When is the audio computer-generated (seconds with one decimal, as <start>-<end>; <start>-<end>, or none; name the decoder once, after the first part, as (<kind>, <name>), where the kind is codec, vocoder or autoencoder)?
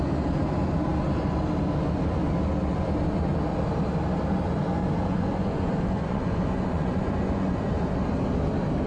4.8-7.7 (vocoder, Vocos)